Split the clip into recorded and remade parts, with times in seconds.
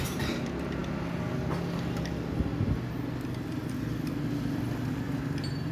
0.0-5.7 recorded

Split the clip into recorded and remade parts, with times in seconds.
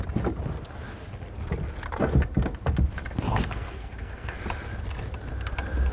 0.0-3.3 recorded; 3.3-4.4 remade; 4.4-5.9 recorded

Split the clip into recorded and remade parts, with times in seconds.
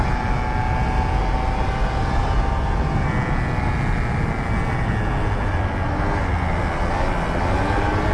0.0-8.1 recorded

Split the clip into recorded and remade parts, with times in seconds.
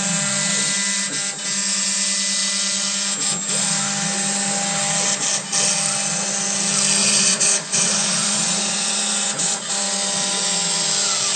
0.0-7.0 recorded; 7.0-9.7 remade; 9.7-11.4 recorded